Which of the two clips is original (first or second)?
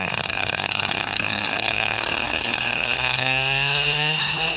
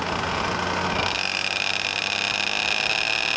second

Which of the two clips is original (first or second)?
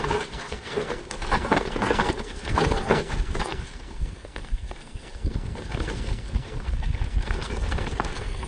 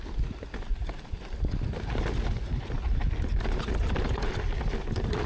second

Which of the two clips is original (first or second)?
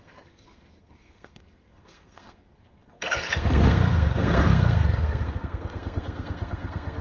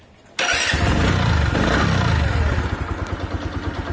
second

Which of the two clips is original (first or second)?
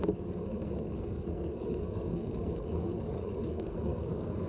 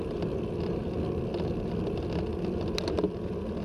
second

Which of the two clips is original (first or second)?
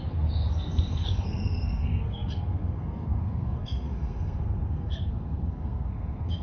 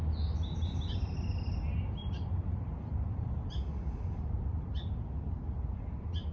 second